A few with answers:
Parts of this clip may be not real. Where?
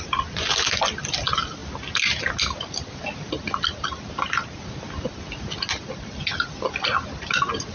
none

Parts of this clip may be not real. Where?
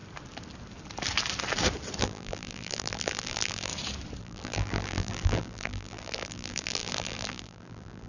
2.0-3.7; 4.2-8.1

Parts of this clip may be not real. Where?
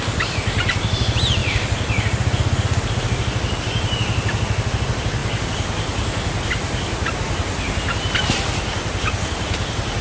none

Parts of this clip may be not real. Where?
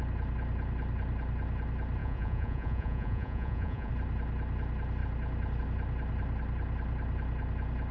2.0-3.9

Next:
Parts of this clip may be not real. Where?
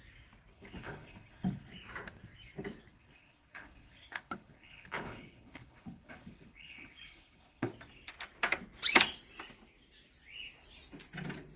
0.5-1.7; 2.9-7.7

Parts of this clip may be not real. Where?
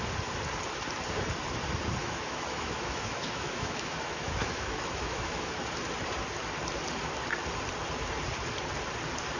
2.0-5.6